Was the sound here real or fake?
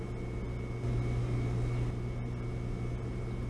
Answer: real